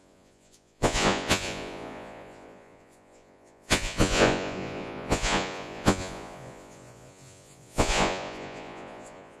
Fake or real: fake